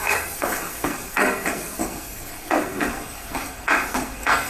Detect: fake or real fake